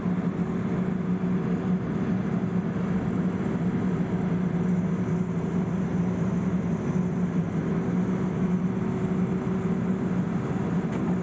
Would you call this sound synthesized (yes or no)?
no